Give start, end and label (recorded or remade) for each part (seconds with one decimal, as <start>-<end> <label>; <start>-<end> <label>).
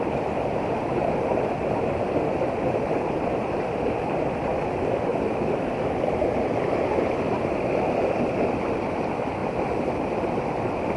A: 0.0-11.0 recorded